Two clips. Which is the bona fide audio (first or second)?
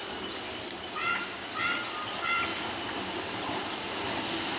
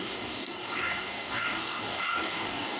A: first